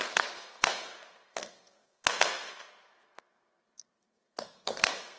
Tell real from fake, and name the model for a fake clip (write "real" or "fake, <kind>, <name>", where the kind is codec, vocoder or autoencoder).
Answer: fake, codec, SNAC